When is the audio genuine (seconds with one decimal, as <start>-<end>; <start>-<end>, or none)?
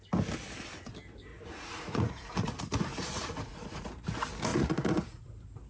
0.0-1.3; 2.5-2.9; 3.9-4.5; 5.3-5.7